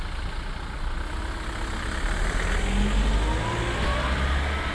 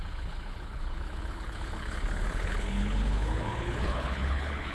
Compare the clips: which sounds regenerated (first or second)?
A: second